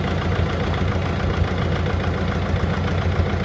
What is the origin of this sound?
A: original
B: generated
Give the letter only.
A